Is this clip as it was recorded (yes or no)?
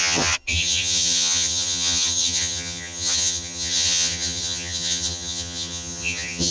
no